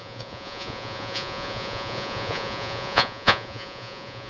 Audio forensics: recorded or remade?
remade